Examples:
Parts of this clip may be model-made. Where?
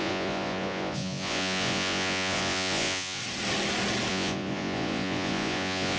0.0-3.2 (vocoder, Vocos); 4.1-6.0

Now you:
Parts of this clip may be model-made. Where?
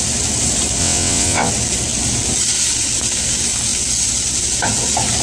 0.8-1.5 (vocoder, WaveNeXt)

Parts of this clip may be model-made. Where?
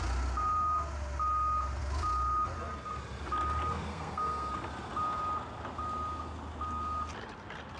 3.9-4.5 (codec, SNAC)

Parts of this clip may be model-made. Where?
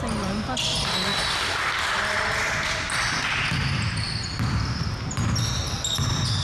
none